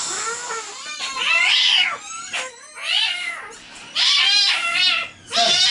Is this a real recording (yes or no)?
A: yes